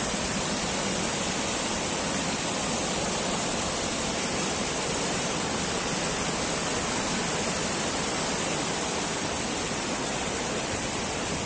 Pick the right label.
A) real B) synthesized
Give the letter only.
B